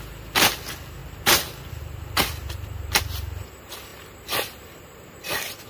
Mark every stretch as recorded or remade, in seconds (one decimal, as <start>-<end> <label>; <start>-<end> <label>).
0.0-5.7 recorded